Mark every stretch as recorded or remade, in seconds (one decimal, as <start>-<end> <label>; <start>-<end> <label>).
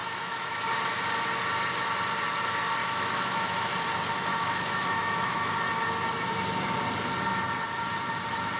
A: 0.0-0.6 remade; 0.6-2.8 recorded; 2.8-3.7 remade; 3.7-4.3 recorded; 4.3-5.5 remade; 5.5-8.6 recorded